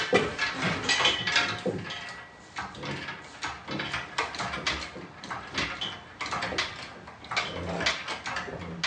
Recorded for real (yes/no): yes